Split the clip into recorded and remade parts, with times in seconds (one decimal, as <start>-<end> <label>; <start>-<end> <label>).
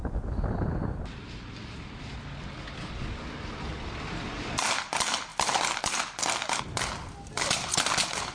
0.0-8.3 recorded